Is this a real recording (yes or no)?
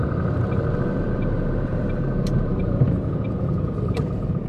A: no